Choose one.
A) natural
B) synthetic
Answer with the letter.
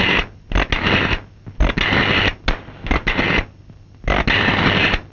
A